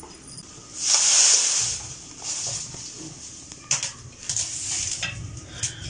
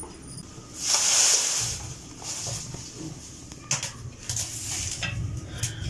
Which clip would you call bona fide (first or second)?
second